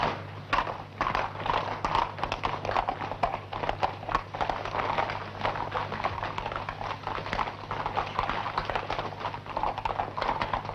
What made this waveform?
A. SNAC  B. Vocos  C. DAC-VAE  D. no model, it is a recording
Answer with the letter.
D